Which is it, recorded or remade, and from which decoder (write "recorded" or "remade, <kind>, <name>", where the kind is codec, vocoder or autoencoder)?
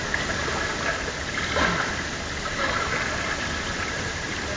recorded